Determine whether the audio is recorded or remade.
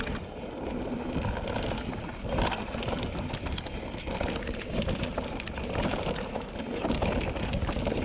recorded